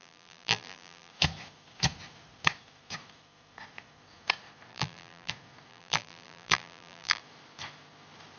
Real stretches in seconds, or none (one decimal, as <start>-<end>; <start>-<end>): 1.1-4.7; 5.3-5.7; 7.2-8.4